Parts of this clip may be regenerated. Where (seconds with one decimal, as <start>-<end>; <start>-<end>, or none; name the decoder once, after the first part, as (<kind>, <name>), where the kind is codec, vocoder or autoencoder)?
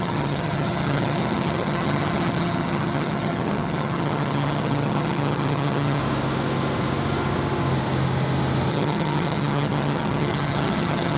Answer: 0.0-6.0 (vocoder, HiFi-GAN); 8.7-11.2